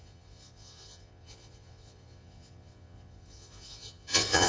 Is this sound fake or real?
fake